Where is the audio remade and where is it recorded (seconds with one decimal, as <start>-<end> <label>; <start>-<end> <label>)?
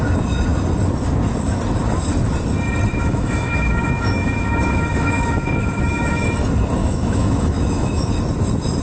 0.0-2.9 recorded; 2.9-6.3 remade; 6.3-6.8 recorded; 6.8-8.1 remade; 8.1-8.8 recorded